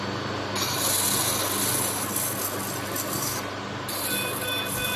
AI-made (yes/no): no